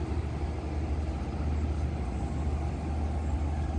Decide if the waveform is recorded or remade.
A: recorded